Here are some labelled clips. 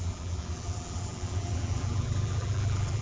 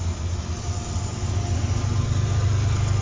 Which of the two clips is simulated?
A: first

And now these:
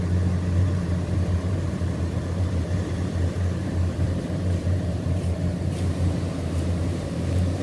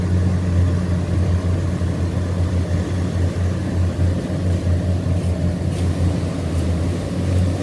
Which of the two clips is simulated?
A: first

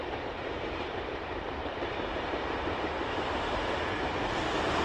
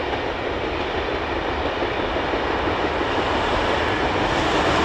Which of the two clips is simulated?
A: first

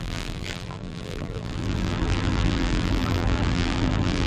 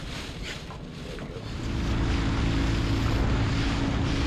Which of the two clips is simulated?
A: first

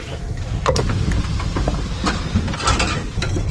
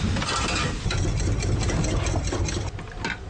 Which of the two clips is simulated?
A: first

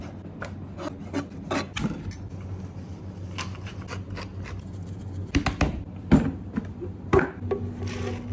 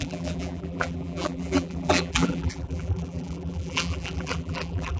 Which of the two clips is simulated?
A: second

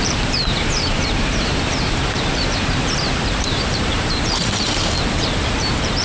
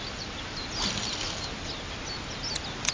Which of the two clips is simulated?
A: first